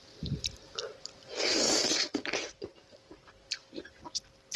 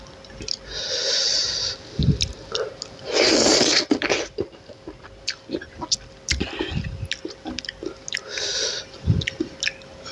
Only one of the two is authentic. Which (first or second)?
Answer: second